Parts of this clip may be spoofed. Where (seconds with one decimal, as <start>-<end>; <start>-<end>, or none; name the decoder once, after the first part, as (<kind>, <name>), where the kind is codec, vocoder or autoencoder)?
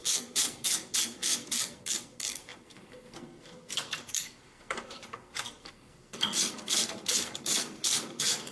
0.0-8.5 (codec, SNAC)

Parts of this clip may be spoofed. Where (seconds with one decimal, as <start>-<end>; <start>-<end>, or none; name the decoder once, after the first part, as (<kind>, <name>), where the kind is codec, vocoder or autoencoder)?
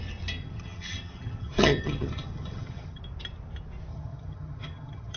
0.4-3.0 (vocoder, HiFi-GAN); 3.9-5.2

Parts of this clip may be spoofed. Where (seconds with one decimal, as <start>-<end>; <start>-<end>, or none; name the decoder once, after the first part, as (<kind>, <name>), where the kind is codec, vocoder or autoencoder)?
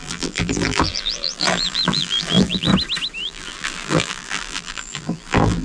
0.0-2.7 (vocoder, BigVGAN v2); 3.2-5.6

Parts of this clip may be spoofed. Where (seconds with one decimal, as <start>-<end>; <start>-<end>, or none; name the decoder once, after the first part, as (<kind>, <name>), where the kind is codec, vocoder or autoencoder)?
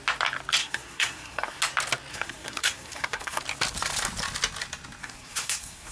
0.6-1.6 (codec, SNAC); 2.1-3.4; 5.0-5.9